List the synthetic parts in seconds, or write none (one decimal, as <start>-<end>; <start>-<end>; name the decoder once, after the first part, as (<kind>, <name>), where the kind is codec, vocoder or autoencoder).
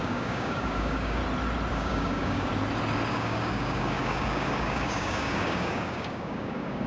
0.0-1.2 (codec, DAC); 1.7-2.5; 3.1-6.9